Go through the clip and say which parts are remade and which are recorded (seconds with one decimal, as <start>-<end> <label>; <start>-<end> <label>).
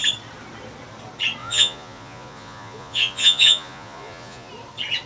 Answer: 0.0-1.4 recorded; 1.4-4.5 remade; 4.5-5.1 recorded